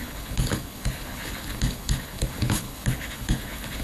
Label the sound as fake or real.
fake